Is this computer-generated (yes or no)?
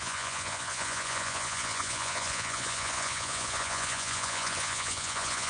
yes